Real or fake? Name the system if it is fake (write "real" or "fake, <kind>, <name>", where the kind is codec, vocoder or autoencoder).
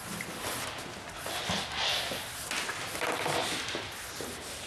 real